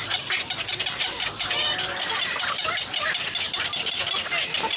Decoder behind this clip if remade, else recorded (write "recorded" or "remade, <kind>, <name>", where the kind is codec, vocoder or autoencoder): recorded